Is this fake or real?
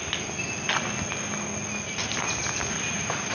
real